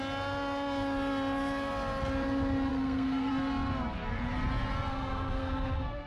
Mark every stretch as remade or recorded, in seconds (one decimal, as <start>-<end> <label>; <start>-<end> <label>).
0.0-2.7 recorded; 2.7-3.3 remade; 3.3-4.9 recorded; 4.9-6.1 remade